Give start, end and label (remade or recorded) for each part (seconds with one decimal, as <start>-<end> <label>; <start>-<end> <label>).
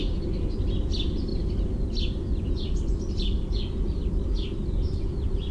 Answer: 0.0-5.5 recorded